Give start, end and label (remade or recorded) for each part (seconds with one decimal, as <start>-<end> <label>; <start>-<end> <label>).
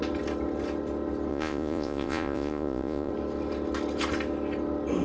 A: 0.0-1.3 recorded; 1.3-3.1 remade; 3.1-5.0 recorded